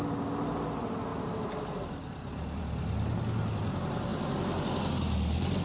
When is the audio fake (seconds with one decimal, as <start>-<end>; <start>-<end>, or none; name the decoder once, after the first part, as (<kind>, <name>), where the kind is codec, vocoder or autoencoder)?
none